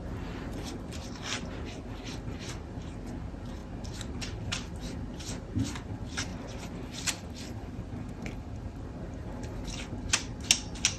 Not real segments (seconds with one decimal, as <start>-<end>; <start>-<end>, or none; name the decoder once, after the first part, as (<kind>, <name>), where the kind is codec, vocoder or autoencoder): none